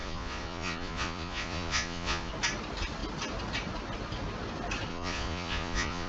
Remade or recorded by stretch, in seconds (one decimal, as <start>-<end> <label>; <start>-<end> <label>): 0.0-2.3 remade; 2.3-4.9 recorded; 4.9-6.1 remade